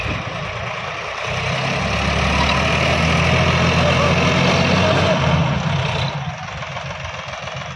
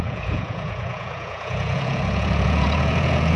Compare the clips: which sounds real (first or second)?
first